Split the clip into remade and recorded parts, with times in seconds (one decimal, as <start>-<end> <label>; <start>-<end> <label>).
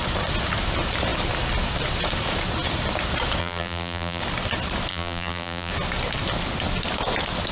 0.0-3.4 recorded; 3.4-4.2 remade; 4.2-4.9 recorded; 4.9-5.7 remade; 5.7-7.5 recorded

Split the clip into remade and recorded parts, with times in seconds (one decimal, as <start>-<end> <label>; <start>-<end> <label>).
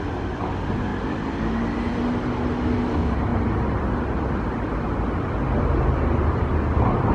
0.0-7.1 recorded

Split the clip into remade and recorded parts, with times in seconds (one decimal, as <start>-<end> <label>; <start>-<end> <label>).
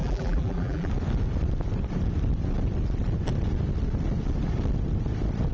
0.0-0.9 remade; 0.9-5.5 recorded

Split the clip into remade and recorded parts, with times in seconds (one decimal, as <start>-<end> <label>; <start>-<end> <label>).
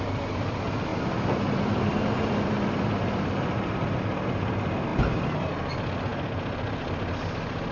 0.0-0.9 recorded; 0.9-3.5 remade; 3.5-4.9 recorded; 4.9-5.5 remade; 5.5-7.7 recorded